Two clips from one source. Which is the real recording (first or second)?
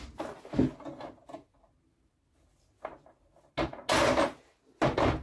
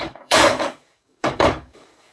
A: first